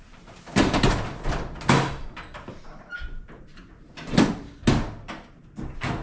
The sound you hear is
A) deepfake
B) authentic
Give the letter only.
B